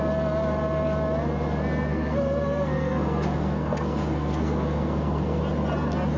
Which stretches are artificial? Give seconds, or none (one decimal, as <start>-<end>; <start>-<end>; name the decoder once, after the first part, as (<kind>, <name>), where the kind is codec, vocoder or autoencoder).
1.9-5.4 (codec, SNAC)